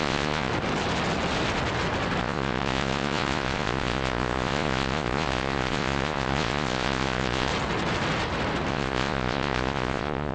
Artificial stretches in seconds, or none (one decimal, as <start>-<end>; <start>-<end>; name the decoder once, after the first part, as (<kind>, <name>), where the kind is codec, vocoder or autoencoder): 0.0-0.5 (vocoder, Vocos); 2.2-7.5; 8.7-10.3